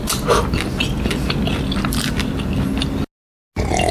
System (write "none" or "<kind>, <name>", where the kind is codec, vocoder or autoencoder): none